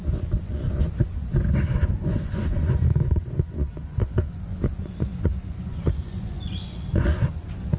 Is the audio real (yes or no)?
no